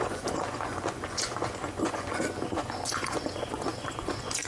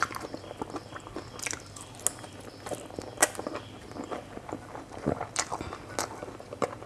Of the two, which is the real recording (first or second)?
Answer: second